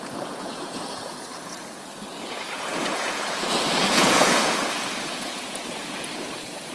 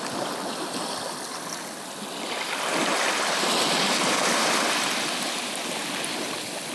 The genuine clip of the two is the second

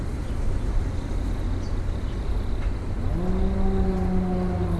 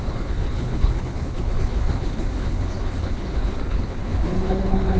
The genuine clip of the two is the first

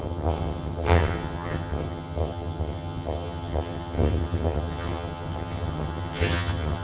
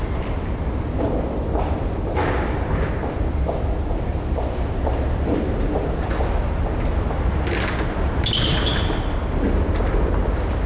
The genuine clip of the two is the second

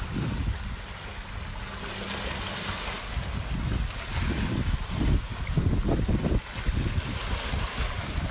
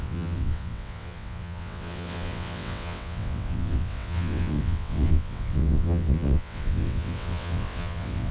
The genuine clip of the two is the first